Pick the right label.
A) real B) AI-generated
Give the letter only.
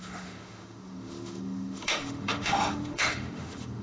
B